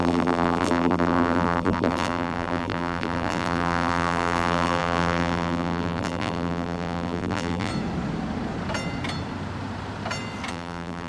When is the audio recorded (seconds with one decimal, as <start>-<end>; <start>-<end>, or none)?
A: 7.7-10.5